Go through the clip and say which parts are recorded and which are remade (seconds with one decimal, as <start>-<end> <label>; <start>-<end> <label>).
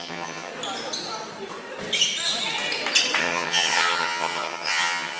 0.0-0.5 remade; 0.5-3.2 recorded; 3.2-5.2 remade